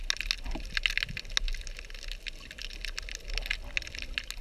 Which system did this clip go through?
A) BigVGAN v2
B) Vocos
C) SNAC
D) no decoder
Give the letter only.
D